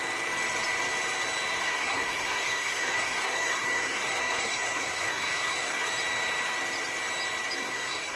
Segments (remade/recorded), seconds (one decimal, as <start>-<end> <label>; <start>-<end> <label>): 0.0-1.6 recorded; 1.6-5.8 remade; 5.8-7.6 recorded; 7.6-8.2 remade

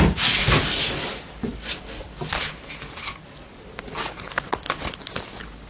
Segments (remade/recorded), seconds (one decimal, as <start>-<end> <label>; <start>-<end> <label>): 0.0-5.7 recorded

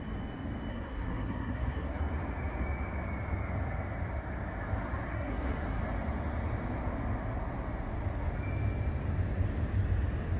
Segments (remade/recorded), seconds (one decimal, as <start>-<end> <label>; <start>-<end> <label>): 0.0-0.7 recorded; 0.7-2.0 remade; 2.0-5.1 recorded; 5.1-5.8 remade; 5.8-10.4 recorded

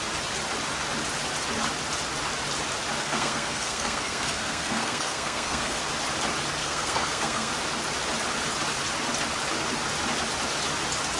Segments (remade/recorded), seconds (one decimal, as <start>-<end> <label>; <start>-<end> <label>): 0.0-3.0 recorded; 3.0-5.8 remade; 5.8-6.6 recorded; 6.6-7.5 remade; 7.5-11.2 recorded